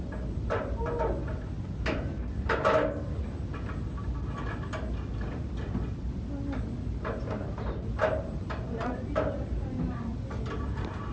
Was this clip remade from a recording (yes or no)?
no